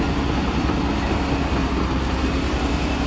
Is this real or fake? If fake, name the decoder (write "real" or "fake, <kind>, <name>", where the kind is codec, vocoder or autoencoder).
real